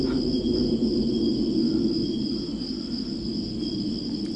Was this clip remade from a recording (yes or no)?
no